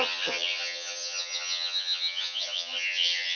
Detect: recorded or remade remade